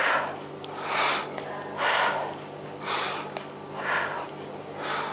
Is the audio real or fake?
real